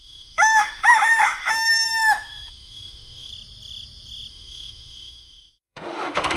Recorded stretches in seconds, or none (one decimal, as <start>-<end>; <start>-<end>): 3.3-4.3